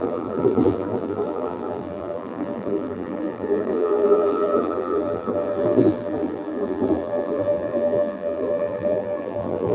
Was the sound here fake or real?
fake